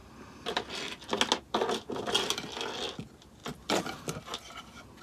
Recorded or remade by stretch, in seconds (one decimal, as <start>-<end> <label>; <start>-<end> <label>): 0.0-5.0 recorded